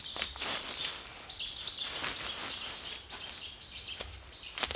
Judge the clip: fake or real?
real